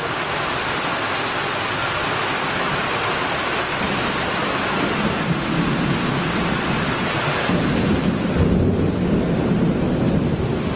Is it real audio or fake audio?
real